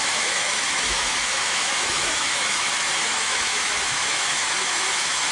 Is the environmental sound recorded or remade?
remade